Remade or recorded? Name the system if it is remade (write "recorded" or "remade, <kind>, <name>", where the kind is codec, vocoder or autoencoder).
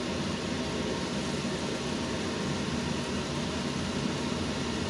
recorded